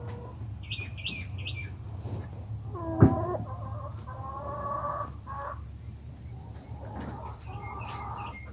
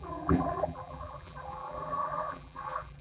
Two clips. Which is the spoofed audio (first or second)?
second